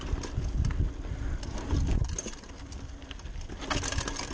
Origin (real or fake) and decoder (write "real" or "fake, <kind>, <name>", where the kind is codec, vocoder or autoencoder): real